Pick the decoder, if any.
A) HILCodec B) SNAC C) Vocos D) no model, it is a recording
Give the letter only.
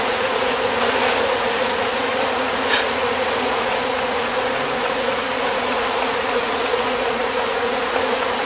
C